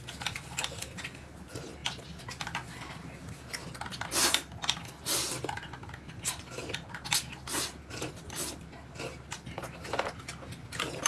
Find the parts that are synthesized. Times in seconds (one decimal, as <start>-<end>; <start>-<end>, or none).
none